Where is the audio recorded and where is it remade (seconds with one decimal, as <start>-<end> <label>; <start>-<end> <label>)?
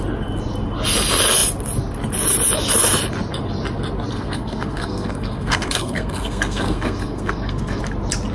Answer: 0.0-4.1 recorded; 4.1-7.8 remade; 7.8-8.3 recorded